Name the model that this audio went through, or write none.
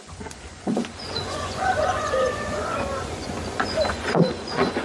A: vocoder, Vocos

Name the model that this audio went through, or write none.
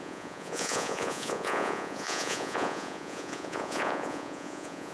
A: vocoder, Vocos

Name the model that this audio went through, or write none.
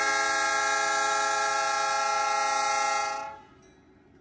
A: none